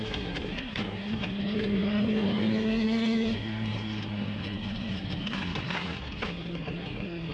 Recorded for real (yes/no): no